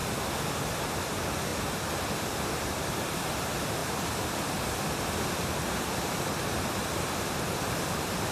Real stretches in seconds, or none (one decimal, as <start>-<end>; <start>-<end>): 0.0-0.8; 1.5-2.4